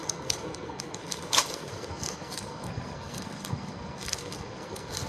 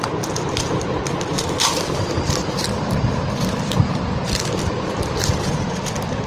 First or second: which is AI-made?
first